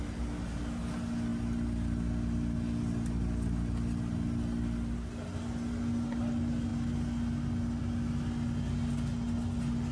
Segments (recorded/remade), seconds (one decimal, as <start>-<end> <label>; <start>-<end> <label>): 0.0-9.9 recorded